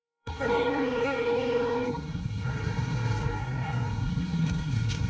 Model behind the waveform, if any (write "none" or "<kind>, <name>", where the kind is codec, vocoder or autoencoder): codec, SNAC